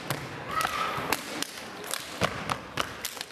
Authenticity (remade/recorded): recorded